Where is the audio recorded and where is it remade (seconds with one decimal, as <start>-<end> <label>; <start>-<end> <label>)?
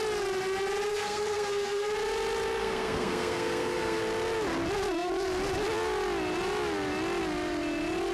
0.0-0.9 recorded; 0.9-1.9 remade; 1.9-2.6 recorded; 2.6-4.0 remade; 4.0-8.1 recorded